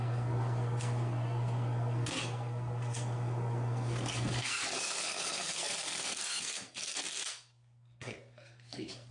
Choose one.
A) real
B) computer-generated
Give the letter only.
B